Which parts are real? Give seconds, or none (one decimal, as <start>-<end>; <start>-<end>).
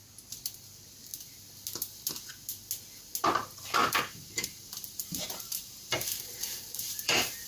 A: 0.0-3.8